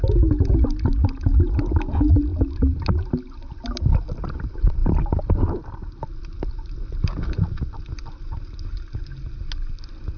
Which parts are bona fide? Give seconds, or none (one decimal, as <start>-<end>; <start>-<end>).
0.0-2.3; 3.1-4.8; 6.8-10.2